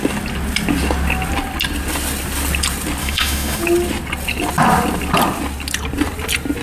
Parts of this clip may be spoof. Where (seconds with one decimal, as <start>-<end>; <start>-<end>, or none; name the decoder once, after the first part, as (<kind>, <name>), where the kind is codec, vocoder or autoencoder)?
3.0-3.6 (autoencoder, DAC-VAE)